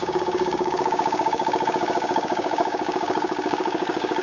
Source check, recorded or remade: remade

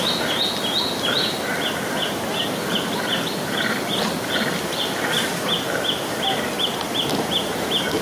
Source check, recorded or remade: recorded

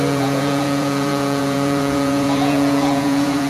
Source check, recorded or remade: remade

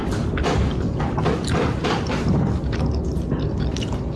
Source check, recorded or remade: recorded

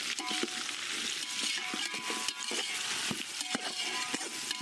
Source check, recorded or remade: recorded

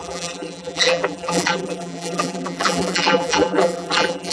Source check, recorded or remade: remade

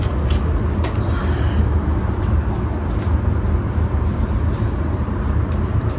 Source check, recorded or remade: recorded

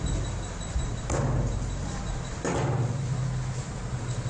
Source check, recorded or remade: recorded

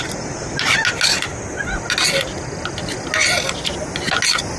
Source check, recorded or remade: recorded